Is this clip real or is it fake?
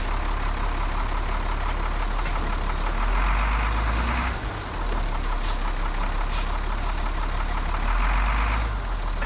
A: real